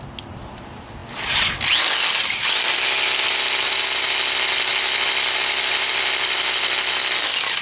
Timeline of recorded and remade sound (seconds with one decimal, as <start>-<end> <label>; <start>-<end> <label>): 0.0-7.6 recorded